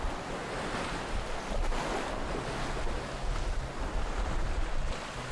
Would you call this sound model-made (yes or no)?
no